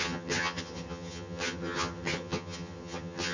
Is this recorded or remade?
remade